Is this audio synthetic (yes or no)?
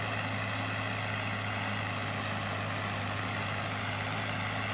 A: no